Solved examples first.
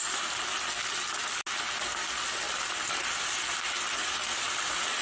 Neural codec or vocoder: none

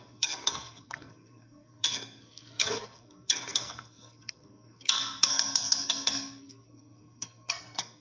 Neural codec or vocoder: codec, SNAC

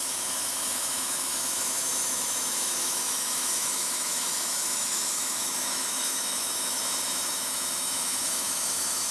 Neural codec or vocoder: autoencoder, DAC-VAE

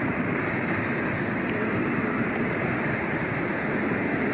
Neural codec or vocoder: none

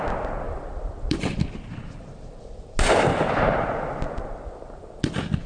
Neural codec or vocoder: none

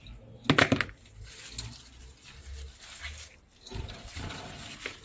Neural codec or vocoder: none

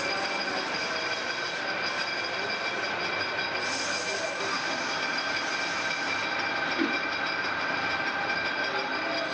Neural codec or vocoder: none